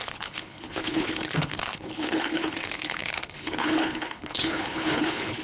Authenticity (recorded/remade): remade